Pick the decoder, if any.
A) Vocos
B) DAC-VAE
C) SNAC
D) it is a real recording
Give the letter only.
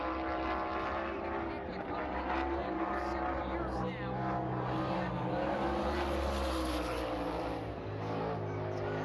D